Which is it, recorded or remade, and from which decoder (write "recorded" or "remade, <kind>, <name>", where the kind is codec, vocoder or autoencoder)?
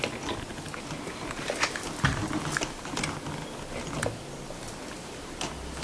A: recorded